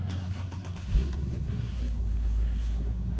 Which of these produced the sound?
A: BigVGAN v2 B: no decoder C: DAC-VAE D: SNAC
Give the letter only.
D